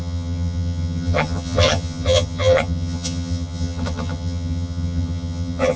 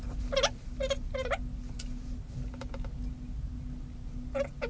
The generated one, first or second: first